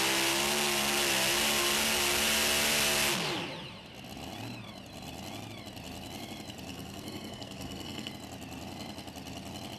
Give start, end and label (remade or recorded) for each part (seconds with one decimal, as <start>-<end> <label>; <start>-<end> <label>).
0.0-6.7 recorded; 6.7-8.1 remade; 8.1-9.8 recorded